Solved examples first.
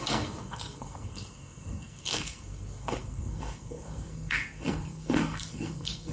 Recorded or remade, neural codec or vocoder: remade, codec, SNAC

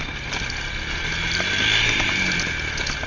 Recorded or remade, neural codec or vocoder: recorded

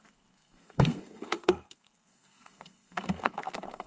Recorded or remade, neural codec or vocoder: remade, codec, SNAC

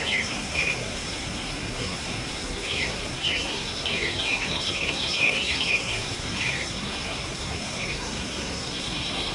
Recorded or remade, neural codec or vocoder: remade, codec, SNAC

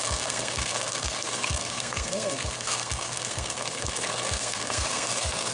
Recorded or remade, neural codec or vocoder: remade, codec, SNAC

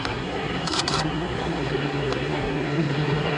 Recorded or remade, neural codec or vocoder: remade, codec, SNAC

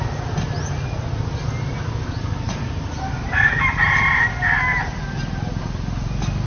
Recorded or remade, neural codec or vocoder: recorded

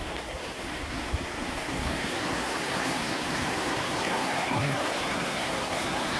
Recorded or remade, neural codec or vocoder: remade, codec, SNAC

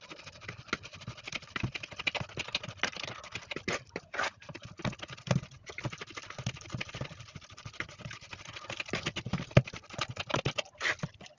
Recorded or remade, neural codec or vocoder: recorded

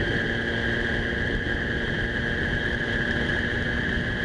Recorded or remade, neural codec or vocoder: recorded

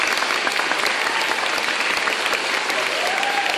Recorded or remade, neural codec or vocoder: recorded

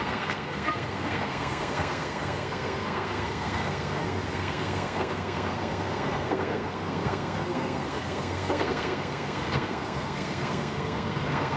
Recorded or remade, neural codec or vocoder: remade, codec, SNAC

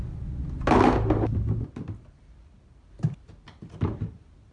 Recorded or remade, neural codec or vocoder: recorded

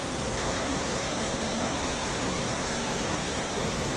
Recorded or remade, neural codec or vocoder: remade, codec, SNAC